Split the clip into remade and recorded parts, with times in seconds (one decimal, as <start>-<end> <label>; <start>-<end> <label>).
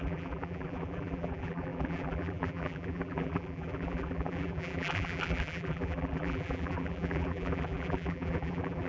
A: 0.0-8.9 remade